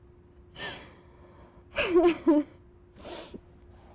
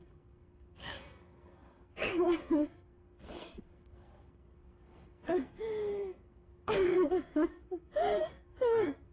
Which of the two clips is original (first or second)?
first